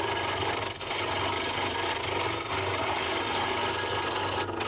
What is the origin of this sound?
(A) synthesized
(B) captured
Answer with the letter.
B